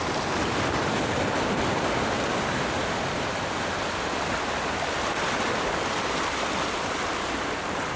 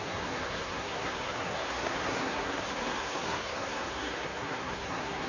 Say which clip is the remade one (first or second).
second